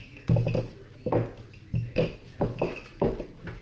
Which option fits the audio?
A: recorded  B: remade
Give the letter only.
A